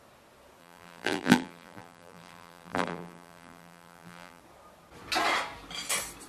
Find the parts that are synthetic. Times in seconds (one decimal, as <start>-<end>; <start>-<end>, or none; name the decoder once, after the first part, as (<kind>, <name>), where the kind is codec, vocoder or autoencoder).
0.6-4.4 (vocoder, BigVGAN v2)